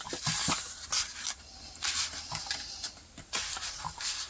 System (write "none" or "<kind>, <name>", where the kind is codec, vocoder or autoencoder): none